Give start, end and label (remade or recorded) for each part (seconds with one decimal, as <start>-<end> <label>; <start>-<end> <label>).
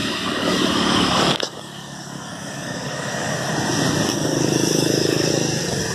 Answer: 0.0-3.5 remade; 3.5-4.1 recorded; 4.1-5.3 remade; 5.3-5.9 recorded